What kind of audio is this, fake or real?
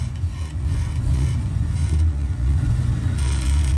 fake